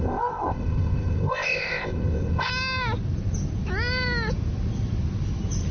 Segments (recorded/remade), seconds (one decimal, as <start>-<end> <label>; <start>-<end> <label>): 0.0-2.5 remade; 2.5-5.7 recorded